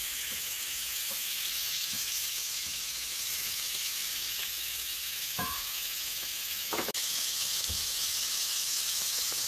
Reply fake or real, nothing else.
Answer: fake